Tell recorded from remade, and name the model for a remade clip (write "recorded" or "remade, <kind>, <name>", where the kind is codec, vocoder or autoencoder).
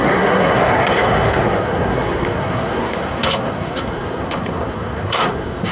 remade, codec, SNAC